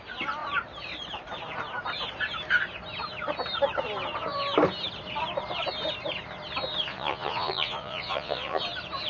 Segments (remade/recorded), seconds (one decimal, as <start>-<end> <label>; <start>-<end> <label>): 0.0-6.9 recorded; 6.9-8.6 remade; 8.6-9.1 recorded